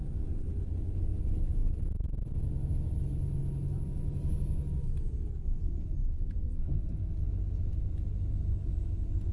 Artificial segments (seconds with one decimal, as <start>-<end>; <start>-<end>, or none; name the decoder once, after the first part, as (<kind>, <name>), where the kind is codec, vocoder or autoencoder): none